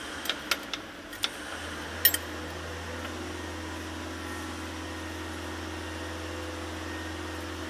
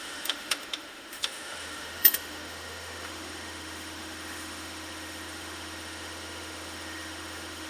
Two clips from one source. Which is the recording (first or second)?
first